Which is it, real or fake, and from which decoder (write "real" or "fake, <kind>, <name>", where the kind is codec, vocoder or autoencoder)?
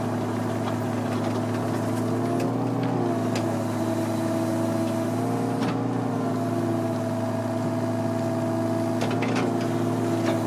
real